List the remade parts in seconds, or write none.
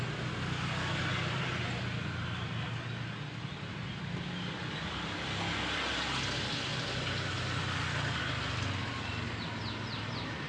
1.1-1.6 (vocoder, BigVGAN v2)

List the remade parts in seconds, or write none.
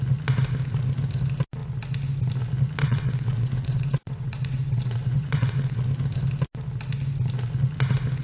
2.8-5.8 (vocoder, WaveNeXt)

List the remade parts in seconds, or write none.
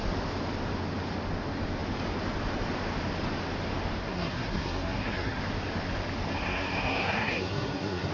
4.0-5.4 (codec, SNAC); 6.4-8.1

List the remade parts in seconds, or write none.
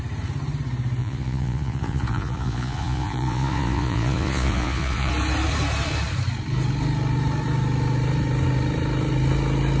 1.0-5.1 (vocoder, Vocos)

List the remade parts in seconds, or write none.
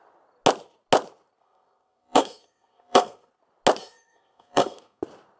1.4-3.3 (codec, SNAC); 3.8-5.0